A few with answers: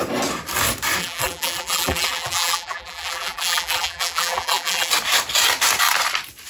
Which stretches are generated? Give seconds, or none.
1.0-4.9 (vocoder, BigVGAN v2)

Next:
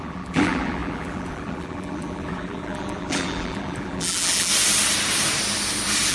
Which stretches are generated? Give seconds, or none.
0.0-4.5 (vocoder, BigVGAN v2)

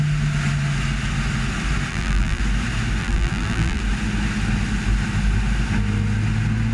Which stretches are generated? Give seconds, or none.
1.9-2.4 (vocoder, BigVGAN v2); 3.0-3.8

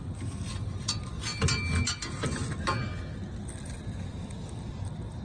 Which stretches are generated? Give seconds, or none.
none

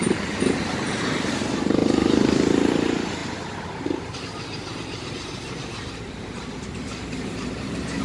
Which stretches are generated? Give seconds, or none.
0.0-1.8 (vocoder, BigVGAN v2); 2.7-8.0

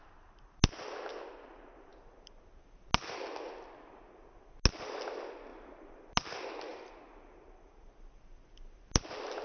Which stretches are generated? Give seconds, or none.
5.5-6.1 (vocoder, BigVGAN v2); 6.7-7.9